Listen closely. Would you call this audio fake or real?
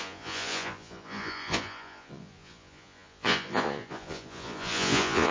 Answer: fake